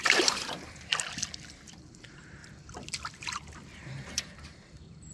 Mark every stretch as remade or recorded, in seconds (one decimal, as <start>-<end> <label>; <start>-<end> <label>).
0.0-0.9 remade; 0.9-1.9 recorded; 1.9-2.4 remade; 2.4-3.1 recorded; 3.1-5.1 remade